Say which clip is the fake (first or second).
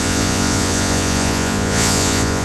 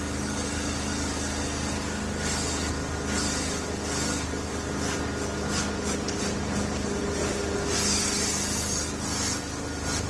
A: first